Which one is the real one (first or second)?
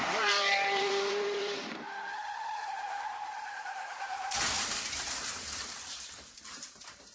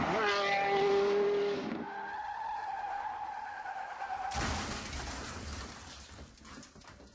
second